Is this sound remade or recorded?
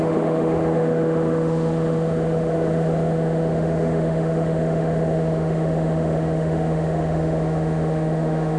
remade